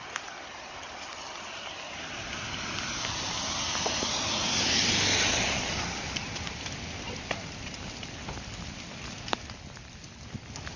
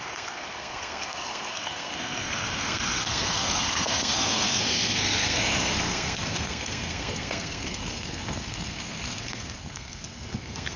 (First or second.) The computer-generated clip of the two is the second